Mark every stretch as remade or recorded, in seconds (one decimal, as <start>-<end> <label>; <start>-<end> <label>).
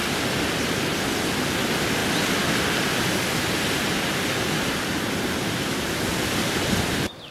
0.0-7.3 recorded